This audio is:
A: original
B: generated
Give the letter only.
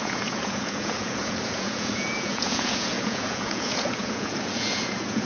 B